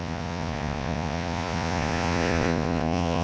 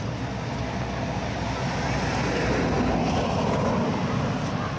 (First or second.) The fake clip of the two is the first